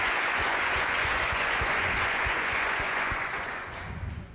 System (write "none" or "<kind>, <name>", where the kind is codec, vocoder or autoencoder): vocoder, Vocos